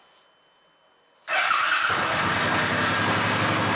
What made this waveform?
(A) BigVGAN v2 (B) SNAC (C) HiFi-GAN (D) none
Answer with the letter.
D